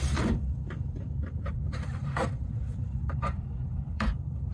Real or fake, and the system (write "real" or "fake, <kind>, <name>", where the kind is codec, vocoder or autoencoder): fake, vocoder, BigVGAN v2